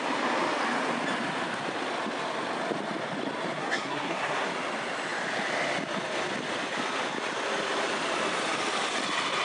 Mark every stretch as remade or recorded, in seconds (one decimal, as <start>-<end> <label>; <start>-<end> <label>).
0.0-3.6 recorded; 3.6-4.5 remade; 4.5-9.4 recorded